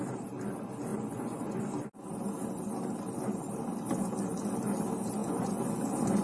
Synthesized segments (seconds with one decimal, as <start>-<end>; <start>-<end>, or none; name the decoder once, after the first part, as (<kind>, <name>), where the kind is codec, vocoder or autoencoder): 0.9-1.6 (vocoder, Vocos); 5.2-6.2